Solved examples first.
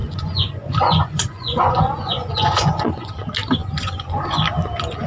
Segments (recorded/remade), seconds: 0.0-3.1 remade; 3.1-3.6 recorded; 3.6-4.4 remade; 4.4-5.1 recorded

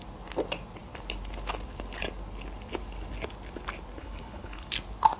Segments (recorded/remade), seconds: 0.0-4.0 recorded; 4.0-4.7 remade; 4.7-5.2 recorded

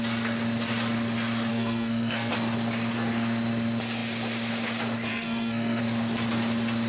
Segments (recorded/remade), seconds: 0.0-1.5 recorded; 1.5-2.3 remade; 2.3-5.1 recorded; 5.1-5.8 remade; 5.8-6.9 recorded